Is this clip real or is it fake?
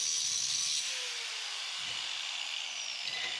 real